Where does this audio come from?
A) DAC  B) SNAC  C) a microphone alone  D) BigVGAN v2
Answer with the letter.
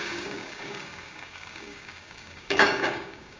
A